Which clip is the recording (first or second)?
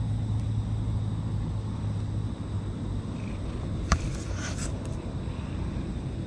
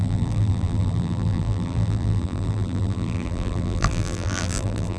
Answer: first